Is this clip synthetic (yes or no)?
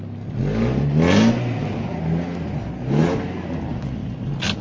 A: no